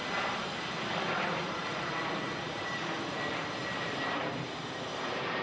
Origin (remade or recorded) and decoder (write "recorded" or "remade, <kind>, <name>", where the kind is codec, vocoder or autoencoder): remade, vocoder, BigVGAN v2